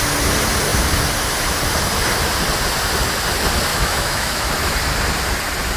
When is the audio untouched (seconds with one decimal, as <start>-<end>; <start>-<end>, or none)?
0.0-3.7; 4.5-5.8